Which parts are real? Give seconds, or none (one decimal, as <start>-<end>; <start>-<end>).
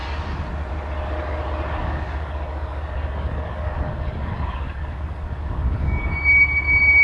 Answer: 0.0-1.8; 6.0-7.0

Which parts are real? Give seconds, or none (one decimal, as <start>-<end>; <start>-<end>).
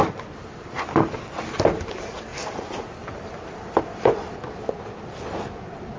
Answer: 0.0-6.0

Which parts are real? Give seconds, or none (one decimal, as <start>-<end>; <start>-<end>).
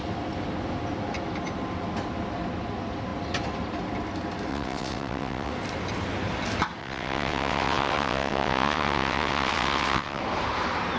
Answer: 0.0-4.5; 5.5-6.8; 10.2-11.0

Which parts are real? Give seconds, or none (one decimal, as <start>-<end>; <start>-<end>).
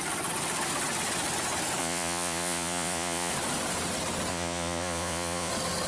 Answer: 0.0-1.8; 3.3-4.3; 5.5-5.9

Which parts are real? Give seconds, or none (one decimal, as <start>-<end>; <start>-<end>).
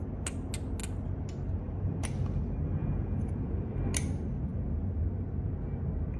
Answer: 0.0-2.8; 3.7-6.2